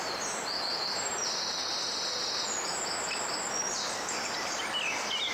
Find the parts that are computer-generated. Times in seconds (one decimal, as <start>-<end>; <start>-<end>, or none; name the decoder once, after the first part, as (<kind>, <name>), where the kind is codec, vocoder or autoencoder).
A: 0.7-1.7 (vocoder, BigVGAN v2)